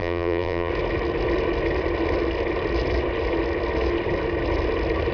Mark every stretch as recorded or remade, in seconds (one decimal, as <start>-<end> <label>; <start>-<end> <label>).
0.0-0.7 remade; 0.7-5.1 recorded

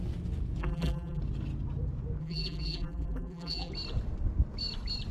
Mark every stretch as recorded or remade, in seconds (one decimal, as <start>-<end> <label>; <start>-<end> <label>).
0.0-0.6 recorded; 0.6-1.2 remade; 1.2-2.2 recorded; 2.2-3.7 remade; 3.7-5.1 recorded